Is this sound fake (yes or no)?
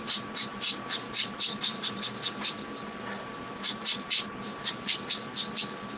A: no